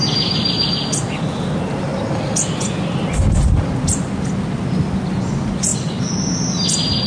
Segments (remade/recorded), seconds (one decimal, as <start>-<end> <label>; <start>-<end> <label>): 0.0-7.1 recorded